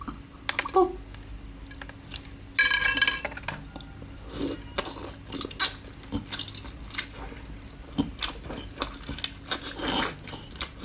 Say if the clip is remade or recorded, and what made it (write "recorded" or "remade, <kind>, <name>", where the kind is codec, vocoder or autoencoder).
recorded